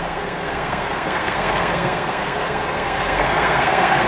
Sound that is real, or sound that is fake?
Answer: fake